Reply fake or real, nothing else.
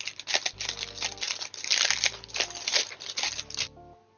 real